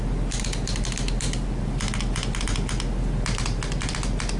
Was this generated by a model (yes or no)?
no